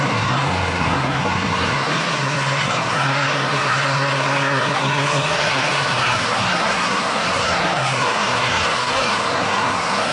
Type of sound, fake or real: fake